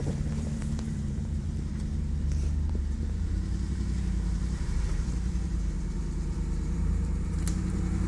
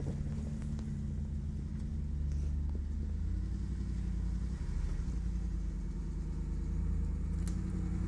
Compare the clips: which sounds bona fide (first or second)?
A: second